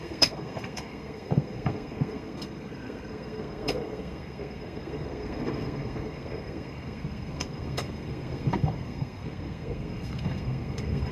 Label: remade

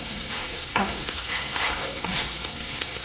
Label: remade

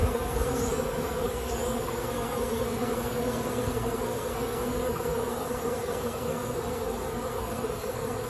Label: remade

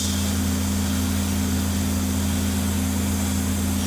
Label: recorded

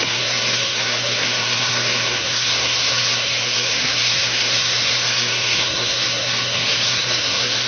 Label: remade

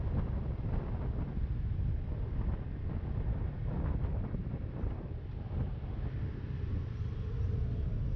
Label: recorded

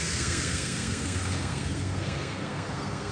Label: remade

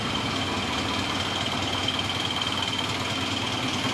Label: recorded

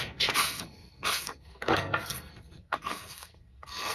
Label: remade